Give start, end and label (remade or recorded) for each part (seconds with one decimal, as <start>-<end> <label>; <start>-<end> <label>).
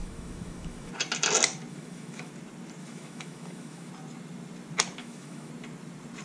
0.0-0.9 remade; 0.9-1.7 recorded; 1.7-2.3 remade; 2.3-2.8 recorded; 2.8-3.9 remade; 3.9-5.0 recorded; 5.0-5.5 remade; 5.5-6.2 recorded